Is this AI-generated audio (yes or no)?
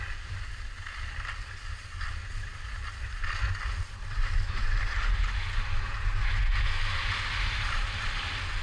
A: no